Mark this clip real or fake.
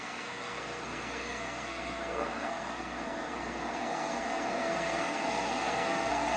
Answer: fake